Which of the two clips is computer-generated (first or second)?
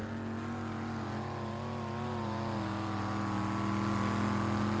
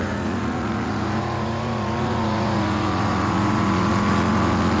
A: second